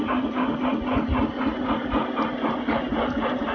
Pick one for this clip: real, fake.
real